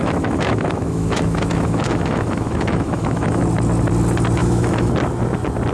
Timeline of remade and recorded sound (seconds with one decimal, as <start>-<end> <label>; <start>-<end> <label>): 0.0-3.4 remade; 3.4-4.4 recorded; 4.4-4.9 remade; 4.9-5.7 recorded